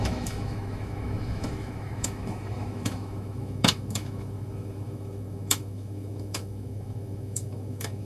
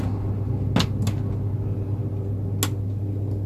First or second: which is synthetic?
first